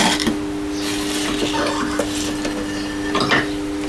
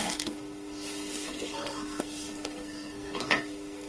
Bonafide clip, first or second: first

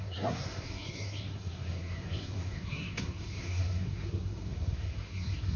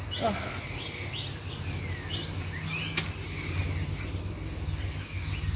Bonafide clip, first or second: second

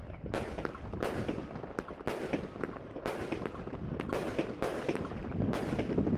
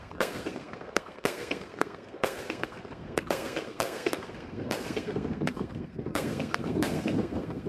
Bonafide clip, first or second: first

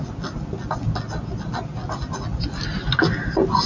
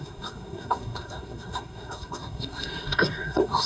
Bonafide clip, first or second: first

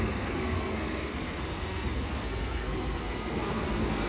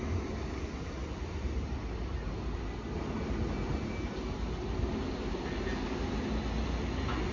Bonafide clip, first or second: second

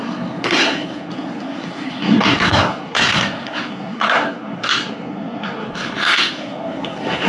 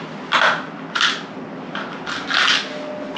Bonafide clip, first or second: second